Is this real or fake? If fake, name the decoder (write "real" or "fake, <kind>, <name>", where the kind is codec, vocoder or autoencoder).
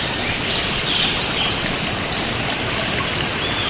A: real